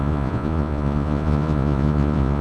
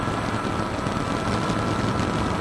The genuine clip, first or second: second